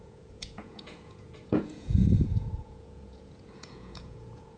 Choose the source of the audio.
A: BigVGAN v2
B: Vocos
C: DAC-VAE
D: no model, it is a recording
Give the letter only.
B